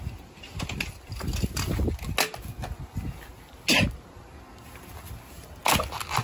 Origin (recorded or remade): recorded